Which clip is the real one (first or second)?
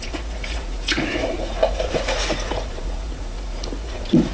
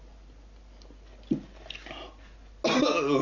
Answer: second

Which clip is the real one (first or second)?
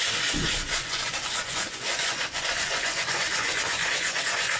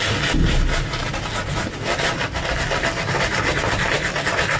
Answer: second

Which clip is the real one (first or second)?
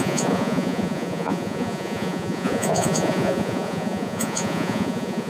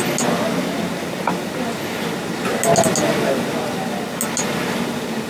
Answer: second